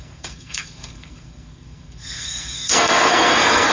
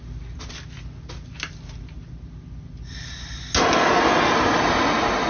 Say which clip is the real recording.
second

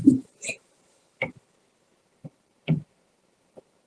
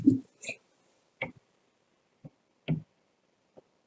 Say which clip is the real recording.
second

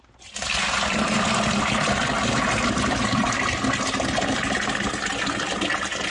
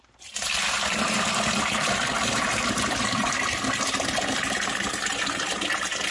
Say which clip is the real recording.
first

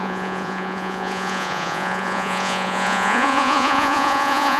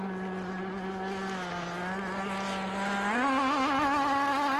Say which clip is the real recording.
second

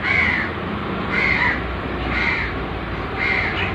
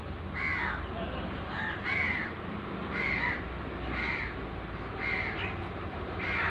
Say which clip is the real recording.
second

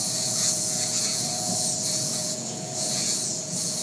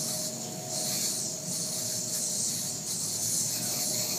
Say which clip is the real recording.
second